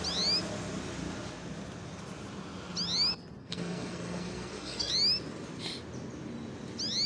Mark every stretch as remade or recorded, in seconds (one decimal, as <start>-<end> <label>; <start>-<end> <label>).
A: 0.0-3.4 recorded; 3.4-4.9 remade; 4.9-7.1 recorded

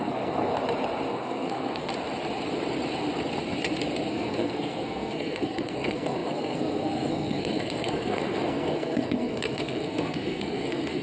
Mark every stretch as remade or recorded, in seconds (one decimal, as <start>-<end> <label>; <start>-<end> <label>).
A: 0.0-0.5 remade; 0.5-1.1 recorded; 1.1-1.9 remade; 1.9-4.1 recorded; 4.1-11.0 remade

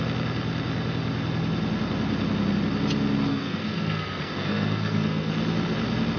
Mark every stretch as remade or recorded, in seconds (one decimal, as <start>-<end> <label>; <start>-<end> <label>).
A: 0.0-3.3 recorded; 3.3-5.3 remade; 5.3-6.2 recorded

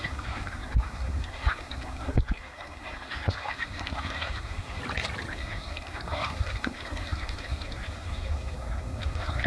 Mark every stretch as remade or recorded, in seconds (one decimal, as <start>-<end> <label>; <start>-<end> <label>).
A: 0.0-4.8 remade; 4.8-5.3 recorded; 5.3-9.5 remade

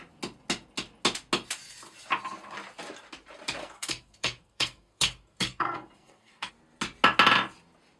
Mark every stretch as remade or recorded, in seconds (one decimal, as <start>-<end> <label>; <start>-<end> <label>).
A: 0.0-3.6 recorded; 3.6-6.5 remade; 6.5-8.0 recorded

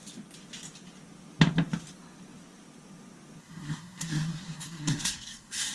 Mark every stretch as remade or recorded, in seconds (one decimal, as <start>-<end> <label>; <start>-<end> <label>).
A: 0.0-3.4 recorded; 3.4-5.7 remade

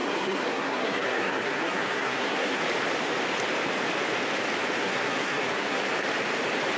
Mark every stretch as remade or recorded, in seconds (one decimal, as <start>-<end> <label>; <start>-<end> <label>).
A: 0.0-2.6 remade; 2.6-4.8 recorded; 4.8-5.8 remade; 5.8-6.8 recorded

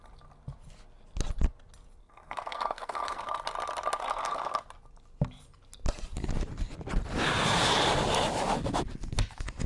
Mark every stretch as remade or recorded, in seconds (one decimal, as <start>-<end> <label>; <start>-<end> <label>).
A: 0.0-2.0 recorded; 2.0-3.4 remade; 3.4-4.0 recorded; 4.0-4.6 remade; 4.6-9.7 recorded